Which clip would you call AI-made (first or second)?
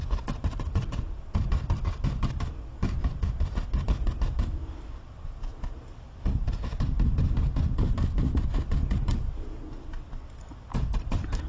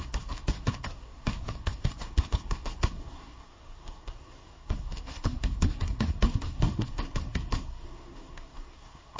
second